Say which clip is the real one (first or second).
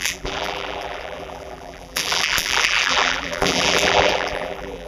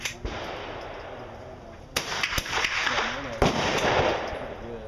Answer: second